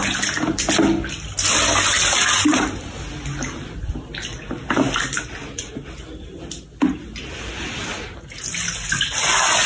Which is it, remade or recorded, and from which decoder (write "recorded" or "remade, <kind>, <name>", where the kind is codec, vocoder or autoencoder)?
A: recorded